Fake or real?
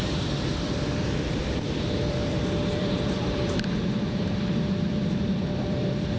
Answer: fake